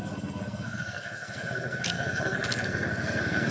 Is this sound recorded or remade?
remade